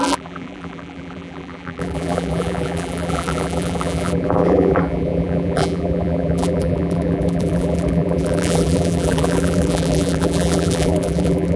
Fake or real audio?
fake